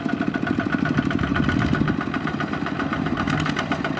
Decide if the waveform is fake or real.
real